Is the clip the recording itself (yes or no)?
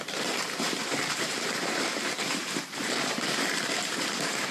no